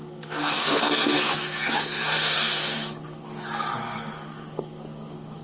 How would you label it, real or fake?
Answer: fake